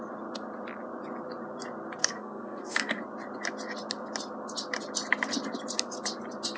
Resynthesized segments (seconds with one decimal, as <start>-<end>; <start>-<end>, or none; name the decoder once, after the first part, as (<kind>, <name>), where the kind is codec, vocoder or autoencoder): 2.0-3.0 (codec, SNAC)